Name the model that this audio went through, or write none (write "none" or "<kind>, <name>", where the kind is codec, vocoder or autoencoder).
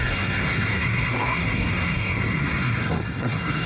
codec, SNAC